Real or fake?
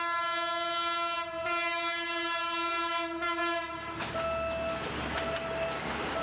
real